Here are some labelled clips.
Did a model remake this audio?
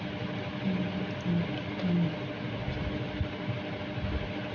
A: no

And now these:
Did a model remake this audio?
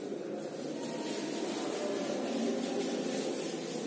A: no